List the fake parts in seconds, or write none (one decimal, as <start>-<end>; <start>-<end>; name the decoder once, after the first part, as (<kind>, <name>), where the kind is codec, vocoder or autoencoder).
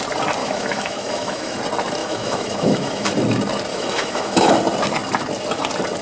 0.4-1.6 (autoencoder, DAC-VAE); 2.0-3.1; 3.7-4.5